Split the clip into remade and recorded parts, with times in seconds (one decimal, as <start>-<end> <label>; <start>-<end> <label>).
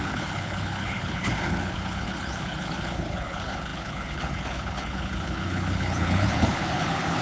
0.0-7.2 remade